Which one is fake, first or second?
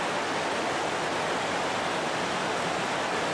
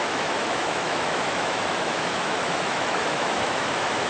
second